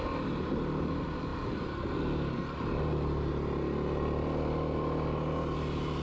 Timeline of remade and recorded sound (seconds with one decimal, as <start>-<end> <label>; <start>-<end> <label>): 0.0-6.0 recorded

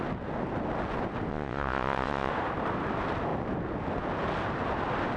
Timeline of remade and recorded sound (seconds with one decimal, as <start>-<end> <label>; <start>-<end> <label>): 0.0-1.3 recorded; 1.3-2.3 remade; 2.3-5.2 recorded